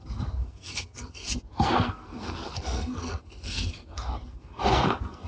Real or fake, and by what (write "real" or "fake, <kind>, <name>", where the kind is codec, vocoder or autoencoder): fake, codec, SNAC